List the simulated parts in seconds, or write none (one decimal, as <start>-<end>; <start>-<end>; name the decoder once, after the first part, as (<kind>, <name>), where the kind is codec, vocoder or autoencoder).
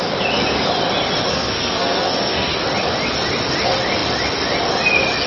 1.3-2.5 (codec, SNAC)